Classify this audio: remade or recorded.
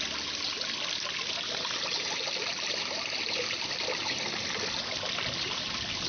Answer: recorded